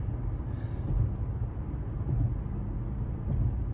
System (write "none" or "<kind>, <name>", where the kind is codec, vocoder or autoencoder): none